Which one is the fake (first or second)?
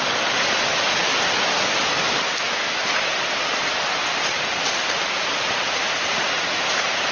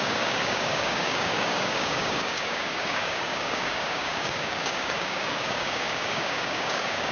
second